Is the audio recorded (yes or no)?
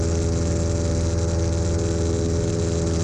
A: yes